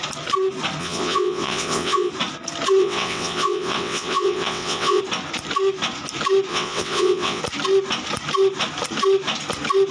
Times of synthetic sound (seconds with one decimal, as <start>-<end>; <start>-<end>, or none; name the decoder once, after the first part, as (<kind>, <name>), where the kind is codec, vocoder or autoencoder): 0.8-2.1 (vocoder, WaveNeXt); 2.8-5.0; 6.5-7.4